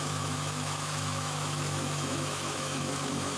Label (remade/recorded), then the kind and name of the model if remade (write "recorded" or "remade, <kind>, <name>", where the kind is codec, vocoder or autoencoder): remade, autoencoder, DAC-VAE